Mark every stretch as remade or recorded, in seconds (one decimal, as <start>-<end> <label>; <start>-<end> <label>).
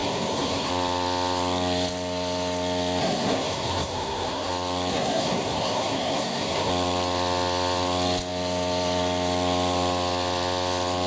0.0-0.7 remade; 0.7-3.0 recorded; 3.0-4.5 remade; 4.5-4.9 recorded; 4.9-6.7 remade; 6.7-11.1 recorded